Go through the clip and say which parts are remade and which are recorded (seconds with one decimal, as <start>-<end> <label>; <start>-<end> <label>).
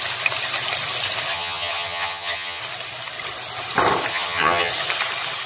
0.0-1.3 recorded; 1.3-2.6 remade; 2.6-4.1 recorded; 4.1-4.7 remade; 4.7-5.5 recorded